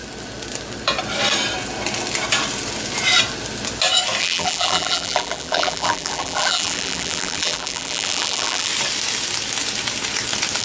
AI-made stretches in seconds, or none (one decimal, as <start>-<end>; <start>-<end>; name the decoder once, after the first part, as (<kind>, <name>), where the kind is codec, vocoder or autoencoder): 4.2-8.7 (vocoder, BigVGAN v2)